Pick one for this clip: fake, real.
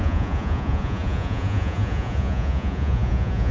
fake